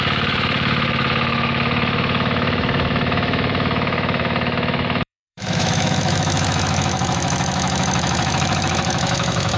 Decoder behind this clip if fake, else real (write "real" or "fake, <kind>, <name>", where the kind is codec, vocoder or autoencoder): fake, autoencoder, DAC-VAE